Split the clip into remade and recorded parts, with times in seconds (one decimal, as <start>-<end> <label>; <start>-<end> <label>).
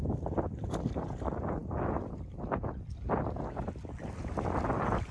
0.0-5.1 recorded